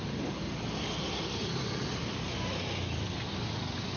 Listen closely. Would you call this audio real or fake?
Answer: real